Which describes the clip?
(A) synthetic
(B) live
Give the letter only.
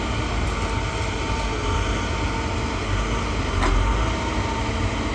B